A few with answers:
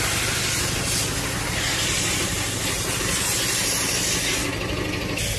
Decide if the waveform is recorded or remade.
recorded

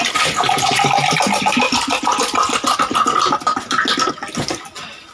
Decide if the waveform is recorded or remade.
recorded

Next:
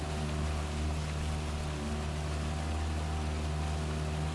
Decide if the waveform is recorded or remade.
recorded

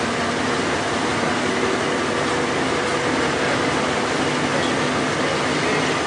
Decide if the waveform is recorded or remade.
recorded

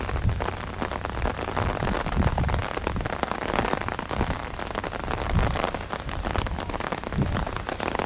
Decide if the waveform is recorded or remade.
recorded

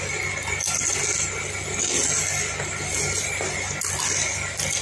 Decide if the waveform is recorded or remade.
recorded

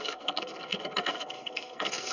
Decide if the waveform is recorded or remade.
remade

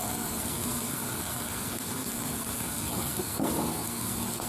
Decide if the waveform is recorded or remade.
remade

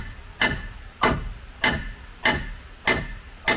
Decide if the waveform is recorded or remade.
recorded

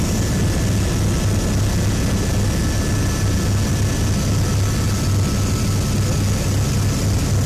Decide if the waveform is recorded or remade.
recorded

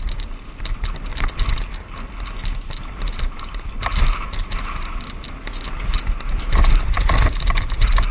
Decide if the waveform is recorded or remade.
recorded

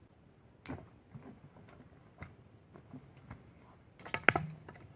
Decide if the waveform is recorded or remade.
recorded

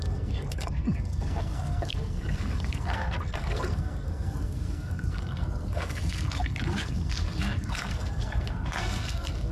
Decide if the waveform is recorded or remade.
remade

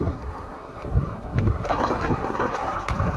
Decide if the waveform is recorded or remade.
remade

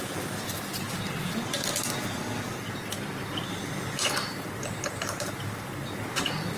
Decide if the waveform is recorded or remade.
recorded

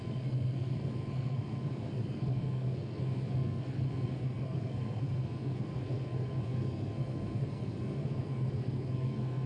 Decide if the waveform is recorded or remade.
remade